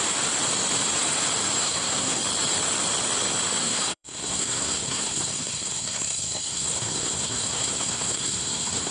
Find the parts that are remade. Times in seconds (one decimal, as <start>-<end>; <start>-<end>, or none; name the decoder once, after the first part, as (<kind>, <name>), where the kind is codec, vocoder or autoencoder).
1.6-2.2 (codec, SNAC); 3.6-8.9